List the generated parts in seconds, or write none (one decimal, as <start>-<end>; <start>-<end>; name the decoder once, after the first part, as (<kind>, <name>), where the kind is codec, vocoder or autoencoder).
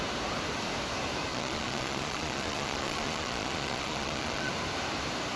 1.3-4.5 (vocoder, Vocos)